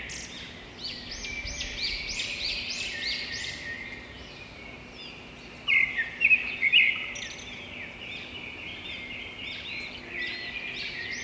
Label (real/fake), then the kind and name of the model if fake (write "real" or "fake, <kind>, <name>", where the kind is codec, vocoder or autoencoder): real